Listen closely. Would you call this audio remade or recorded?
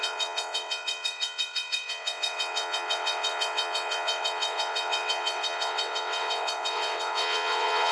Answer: remade